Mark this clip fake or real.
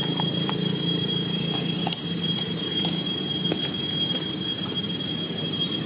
real